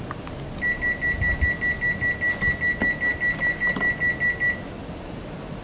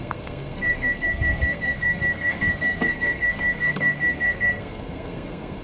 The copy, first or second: second